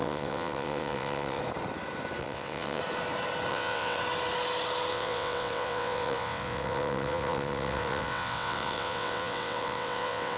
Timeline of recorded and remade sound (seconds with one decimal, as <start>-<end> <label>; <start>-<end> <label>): 0.0-1.4 remade; 1.4-2.2 recorded; 2.2-2.8 remade; 2.8-3.5 recorded; 3.5-4.0 remade; 4.0-4.9 recorded; 4.9-10.4 remade